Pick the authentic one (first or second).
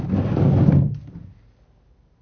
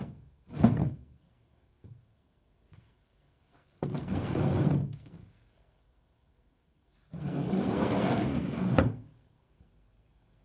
first